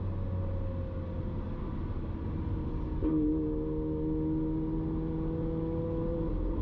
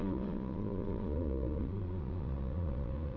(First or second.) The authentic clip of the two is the first